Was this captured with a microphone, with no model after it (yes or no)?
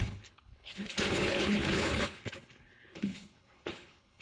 no